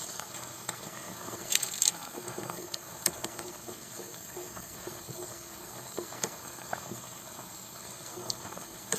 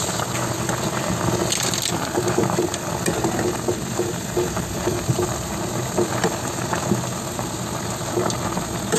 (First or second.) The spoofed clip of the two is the first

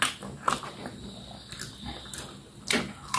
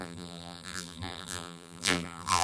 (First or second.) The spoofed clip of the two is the second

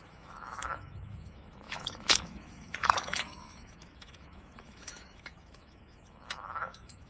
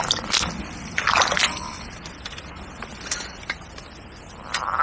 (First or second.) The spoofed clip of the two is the first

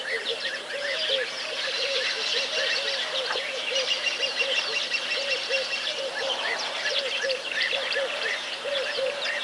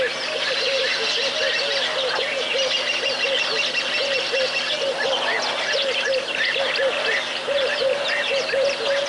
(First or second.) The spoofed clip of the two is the first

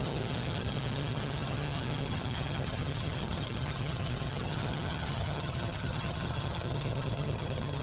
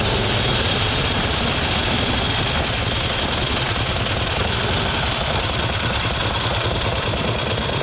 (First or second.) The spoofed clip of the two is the first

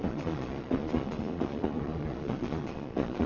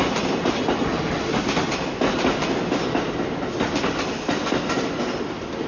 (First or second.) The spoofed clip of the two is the first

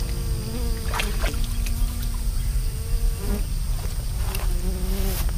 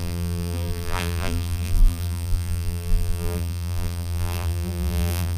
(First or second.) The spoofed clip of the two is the second